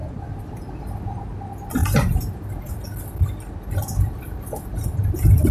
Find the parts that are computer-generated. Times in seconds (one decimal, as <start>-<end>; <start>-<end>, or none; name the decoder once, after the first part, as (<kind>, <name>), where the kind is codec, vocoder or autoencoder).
0.0-0.7 (vocoder, BigVGAN v2); 1.8-2.7